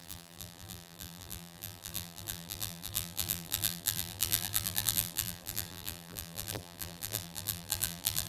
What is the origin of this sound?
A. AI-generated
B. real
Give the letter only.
A